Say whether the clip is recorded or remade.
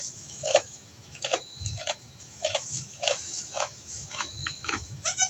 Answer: remade